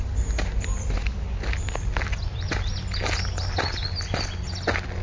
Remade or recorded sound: recorded